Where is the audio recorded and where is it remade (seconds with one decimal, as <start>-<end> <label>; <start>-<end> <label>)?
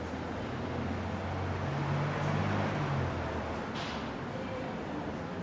0.0-5.4 recorded